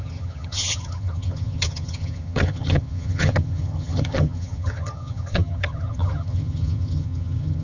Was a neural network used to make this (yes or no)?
yes